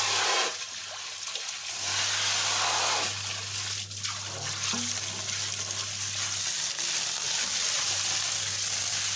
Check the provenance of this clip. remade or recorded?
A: recorded